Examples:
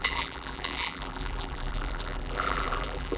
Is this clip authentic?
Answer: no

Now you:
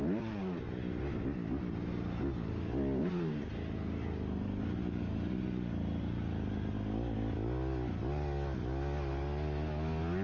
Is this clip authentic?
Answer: yes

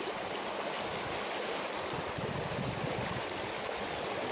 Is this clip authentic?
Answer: yes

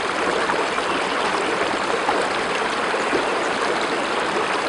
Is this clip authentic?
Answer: yes